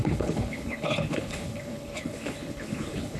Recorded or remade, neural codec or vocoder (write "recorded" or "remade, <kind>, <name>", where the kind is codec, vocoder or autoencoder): remade, codec, HILCodec